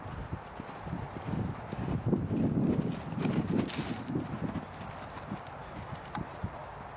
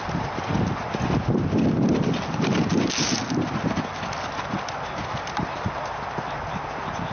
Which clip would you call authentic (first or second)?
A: second